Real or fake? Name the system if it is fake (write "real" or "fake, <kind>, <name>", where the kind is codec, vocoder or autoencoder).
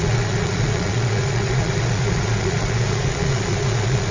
fake, vocoder, Vocos